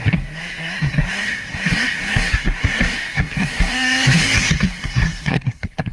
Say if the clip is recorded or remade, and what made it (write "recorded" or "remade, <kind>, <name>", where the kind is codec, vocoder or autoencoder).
remade, codec, SNAC